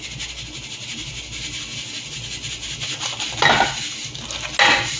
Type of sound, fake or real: real